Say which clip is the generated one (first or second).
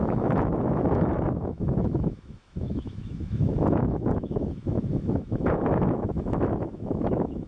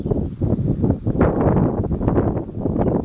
first